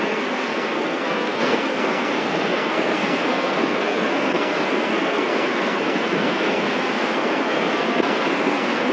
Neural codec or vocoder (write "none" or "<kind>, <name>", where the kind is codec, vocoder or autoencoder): codec, SNAC